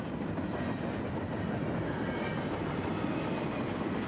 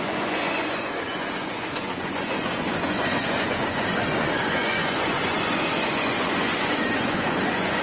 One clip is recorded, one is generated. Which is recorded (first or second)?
first